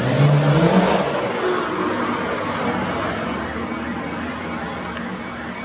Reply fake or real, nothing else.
real